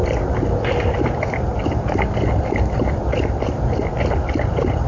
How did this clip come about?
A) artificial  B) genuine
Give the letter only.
B